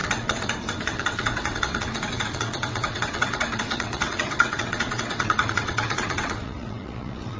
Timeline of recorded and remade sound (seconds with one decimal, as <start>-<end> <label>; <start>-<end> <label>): 0.0-7.4 remade